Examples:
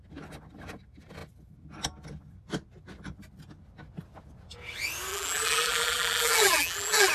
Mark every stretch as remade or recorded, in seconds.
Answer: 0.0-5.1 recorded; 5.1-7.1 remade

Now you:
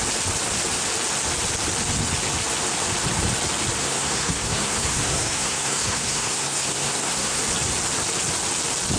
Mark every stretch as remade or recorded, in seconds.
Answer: 0.0-3.8 recorded; 3.8-7.4 remade; 7.4-9.0 recorded

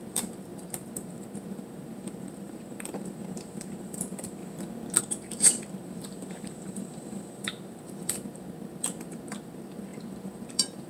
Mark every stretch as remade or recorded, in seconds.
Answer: 0.0-4.4 remade; 4.4-5.0 recorded; 5.0-10.9 remade

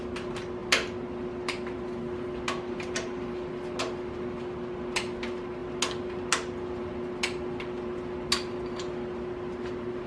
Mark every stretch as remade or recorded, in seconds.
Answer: 0.0-10.1 recorded

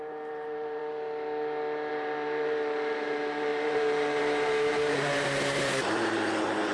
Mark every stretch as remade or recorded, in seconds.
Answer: 0.0-0.8 remade; 0.8-1.9 recorded; 1.9-6.7 remade

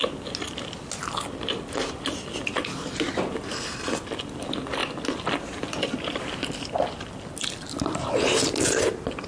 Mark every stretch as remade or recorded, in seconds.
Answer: 0.0-9.3 recorded

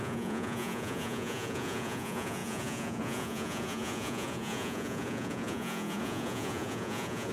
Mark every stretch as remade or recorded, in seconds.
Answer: 0.0-7.3 remade